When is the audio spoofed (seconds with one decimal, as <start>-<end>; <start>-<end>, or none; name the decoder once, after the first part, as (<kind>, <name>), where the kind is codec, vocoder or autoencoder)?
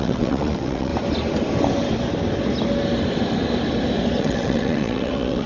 0.0-0.9 (vocoder, WaveNeXt); 4.2-5.5